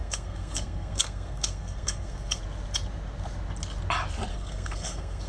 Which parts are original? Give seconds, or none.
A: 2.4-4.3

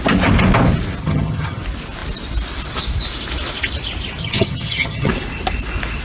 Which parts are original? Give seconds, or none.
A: 0.0-1.0; 1.6-4.2; 5.1-6.0